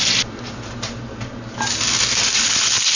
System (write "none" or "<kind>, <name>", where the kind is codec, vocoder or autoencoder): none